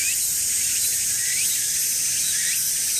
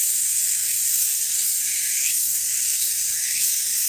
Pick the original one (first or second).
first